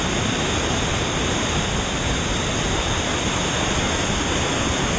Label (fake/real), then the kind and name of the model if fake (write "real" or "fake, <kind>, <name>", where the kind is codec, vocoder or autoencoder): real